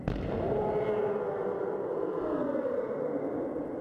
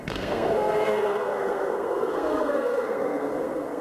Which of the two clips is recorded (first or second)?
first